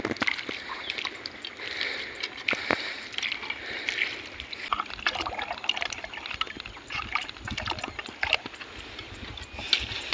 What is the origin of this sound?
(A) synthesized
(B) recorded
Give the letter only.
B